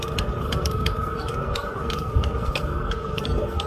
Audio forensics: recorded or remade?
remade